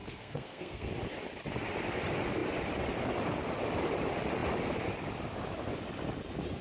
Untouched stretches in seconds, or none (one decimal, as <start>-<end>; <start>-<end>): 0.9-6.6